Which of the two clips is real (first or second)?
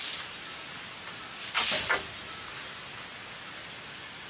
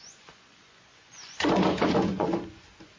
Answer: first